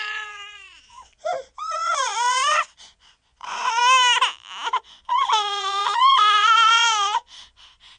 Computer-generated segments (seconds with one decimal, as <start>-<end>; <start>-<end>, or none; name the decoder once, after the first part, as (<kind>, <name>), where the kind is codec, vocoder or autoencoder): 0.0-3.8 (vocoder, Vocos); 4.8-8.0